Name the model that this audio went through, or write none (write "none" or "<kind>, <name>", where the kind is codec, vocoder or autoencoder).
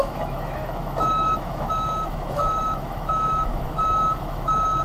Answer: autoencoder, DAC-VAE